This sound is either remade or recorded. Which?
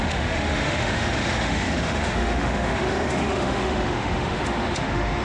remade